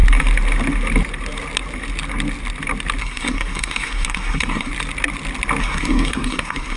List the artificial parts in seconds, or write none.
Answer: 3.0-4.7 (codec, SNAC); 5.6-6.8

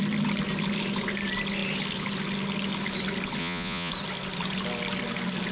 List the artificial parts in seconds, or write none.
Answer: 3.4-3.9 (vocoder, Vocos)

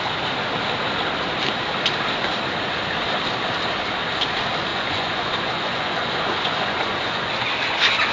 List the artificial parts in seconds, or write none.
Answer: 4.7-7.3 (vocoder, Vocos)

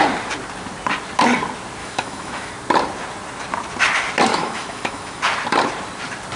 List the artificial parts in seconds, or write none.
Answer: 1.8-2.5 (autoencoder, DAC-VAE); 4.3-5.2